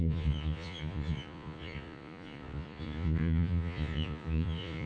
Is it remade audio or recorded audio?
remade